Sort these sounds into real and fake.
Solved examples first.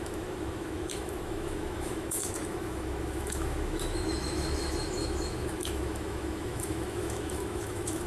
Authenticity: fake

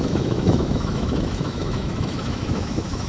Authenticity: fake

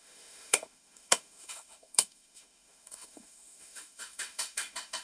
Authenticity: fake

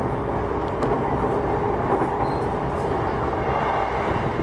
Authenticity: real